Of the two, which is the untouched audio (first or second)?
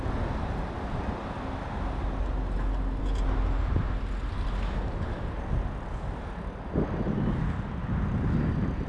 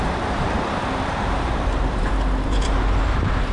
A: first